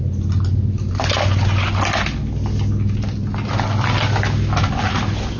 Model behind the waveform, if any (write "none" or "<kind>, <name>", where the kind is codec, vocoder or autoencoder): none